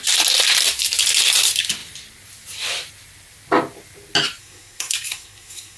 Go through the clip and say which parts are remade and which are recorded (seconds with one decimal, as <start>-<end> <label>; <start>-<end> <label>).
0.0-4.4 recorded; 4.4-5.8 remade